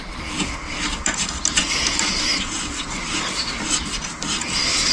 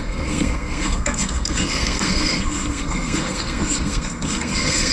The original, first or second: first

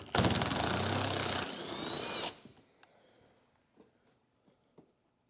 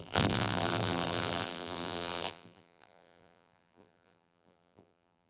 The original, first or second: first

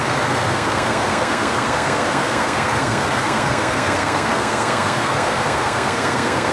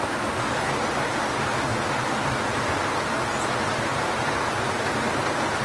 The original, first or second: second